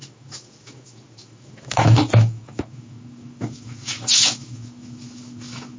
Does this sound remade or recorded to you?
remade